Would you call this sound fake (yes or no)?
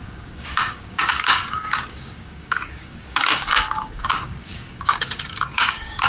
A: yes